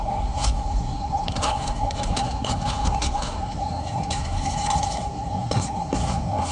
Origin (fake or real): fake